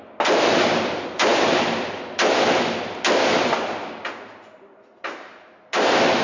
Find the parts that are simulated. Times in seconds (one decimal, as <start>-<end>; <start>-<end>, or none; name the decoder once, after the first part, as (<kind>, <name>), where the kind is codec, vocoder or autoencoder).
none